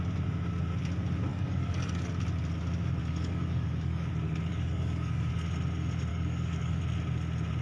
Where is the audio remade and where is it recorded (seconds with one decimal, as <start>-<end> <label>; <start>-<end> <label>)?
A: 0.0-1.3 recorded; 1.3-2.1 remade; 2.1-3.0 recorded; 3.0-4.1 remade; 4.1-4.5 recorded; 4.5-5.3 remade; 5.3-6.1 recorded; 6.1-6.8 remade; 6.8-7.6 recorded